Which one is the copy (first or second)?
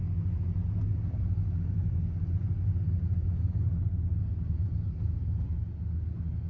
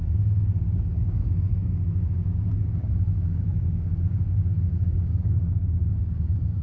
second